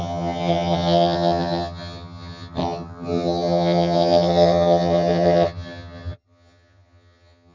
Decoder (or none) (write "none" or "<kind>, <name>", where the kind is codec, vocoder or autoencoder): vocoder, HiFi-GAN